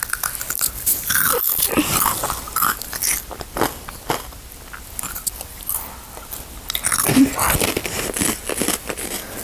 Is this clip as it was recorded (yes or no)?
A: yes